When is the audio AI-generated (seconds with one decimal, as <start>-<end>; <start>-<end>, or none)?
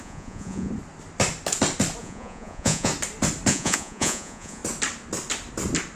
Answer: 0.0-0.7; 2.0-2.9; 3.5-4.6